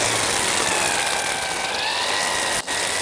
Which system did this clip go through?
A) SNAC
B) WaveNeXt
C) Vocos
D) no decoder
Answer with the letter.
D